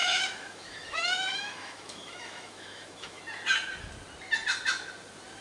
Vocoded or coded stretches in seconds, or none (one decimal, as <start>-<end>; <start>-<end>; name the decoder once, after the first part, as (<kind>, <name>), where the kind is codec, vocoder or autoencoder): 0.0-3.2 (autoencoder, DAC-VAE)